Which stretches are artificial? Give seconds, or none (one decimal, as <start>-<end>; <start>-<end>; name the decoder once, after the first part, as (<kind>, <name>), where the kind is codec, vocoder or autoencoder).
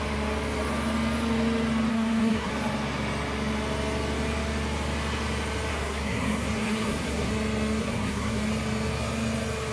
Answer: 1.9-2.5 (codec, SNAC); 5.7-7.3; 7.8-8.4